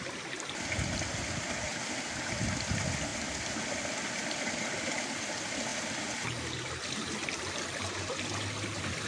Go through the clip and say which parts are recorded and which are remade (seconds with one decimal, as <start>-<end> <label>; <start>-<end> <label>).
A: 0.0-9.1 recorded